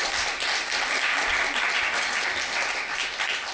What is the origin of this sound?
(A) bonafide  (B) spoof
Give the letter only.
A